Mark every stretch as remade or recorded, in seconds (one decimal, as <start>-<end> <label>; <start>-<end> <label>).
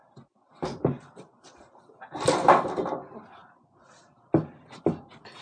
0.0-5.4 recorded